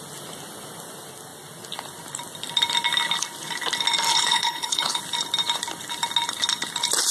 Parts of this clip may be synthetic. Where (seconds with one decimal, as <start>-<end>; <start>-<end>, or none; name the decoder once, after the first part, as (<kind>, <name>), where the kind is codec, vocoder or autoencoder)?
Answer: 4.1-5.0 (codec, HILCodec)